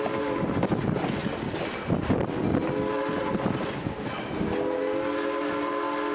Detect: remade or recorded recorded